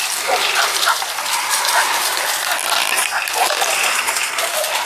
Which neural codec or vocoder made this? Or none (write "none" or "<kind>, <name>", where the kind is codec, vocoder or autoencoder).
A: none